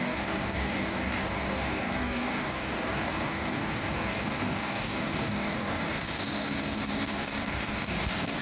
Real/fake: fake